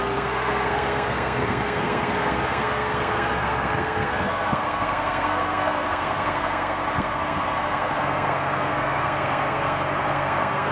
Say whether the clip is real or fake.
fake